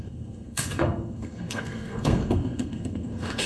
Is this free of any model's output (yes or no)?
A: no